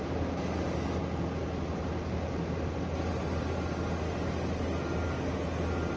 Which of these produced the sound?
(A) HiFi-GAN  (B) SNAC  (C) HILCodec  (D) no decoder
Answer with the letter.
D